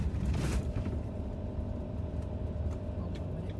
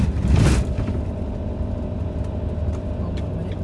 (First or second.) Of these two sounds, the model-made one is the first